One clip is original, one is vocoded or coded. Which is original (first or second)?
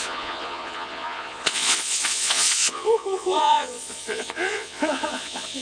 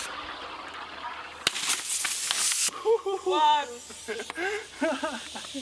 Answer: second